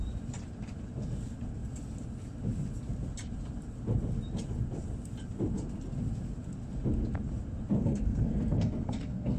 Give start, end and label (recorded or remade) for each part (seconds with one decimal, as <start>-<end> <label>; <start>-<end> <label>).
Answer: 0.0-7.8 recorded; 7.8-9.4 remade